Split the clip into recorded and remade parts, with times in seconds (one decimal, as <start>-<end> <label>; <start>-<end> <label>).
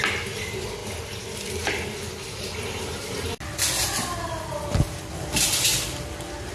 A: 0.0-6.5 recorded